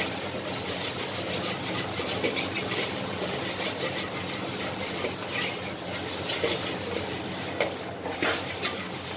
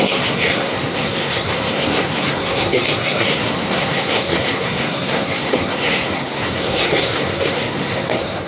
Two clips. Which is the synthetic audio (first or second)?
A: second